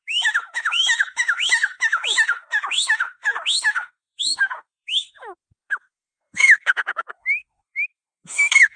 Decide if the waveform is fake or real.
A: fake